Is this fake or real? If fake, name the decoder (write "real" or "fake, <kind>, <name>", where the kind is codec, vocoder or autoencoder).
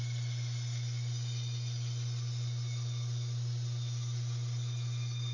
real